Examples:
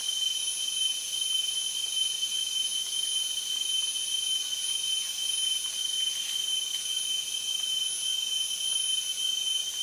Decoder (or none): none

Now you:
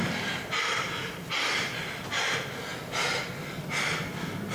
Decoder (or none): vocoder, BigVGAN v2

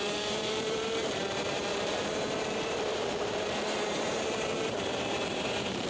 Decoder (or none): vocoder, BigVGAN v2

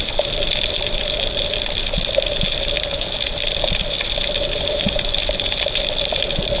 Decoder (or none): vocoder, BigVGAN v2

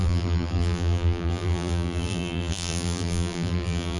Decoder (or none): vocoder, BigVGAN v2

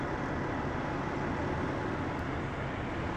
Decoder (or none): none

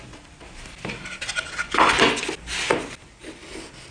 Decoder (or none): none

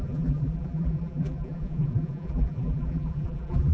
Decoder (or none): vocoder, BigVGAN v2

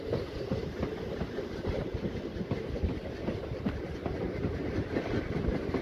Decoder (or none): vocoder, BigVGAN v2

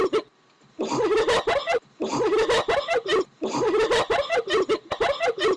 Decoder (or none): none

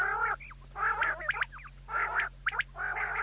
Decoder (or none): none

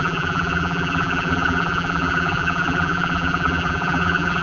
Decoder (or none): vocoder, BigVGAN v2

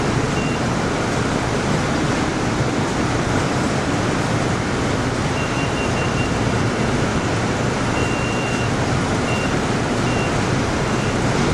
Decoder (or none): vocoder, BigVGAN v2